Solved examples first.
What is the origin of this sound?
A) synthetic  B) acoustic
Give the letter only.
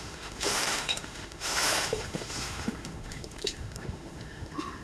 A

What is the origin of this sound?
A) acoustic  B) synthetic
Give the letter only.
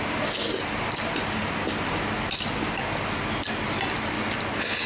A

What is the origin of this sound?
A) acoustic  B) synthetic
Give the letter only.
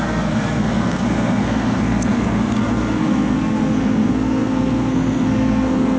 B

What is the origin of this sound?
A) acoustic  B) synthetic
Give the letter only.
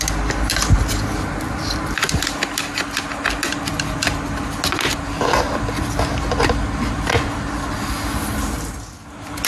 A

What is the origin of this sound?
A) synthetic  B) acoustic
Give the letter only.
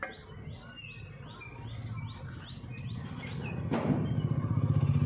B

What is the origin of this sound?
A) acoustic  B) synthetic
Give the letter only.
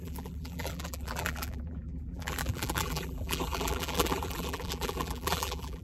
B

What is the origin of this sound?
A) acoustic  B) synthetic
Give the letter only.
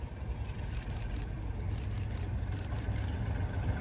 A